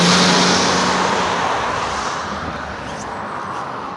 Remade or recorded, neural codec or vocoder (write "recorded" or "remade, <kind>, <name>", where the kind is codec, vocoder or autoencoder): recorded